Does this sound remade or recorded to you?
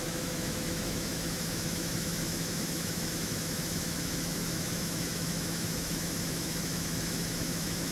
remade